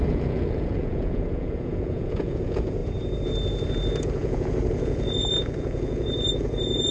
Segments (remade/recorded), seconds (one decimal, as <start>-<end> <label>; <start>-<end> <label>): 0.0-2.8 remade; 2.8-4.0 recorded; 4.0-6.9 remade